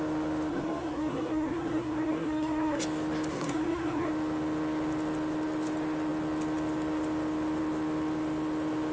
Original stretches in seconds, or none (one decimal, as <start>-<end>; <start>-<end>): 0.0-0.5; 2.8-3.3; 4.1-8.9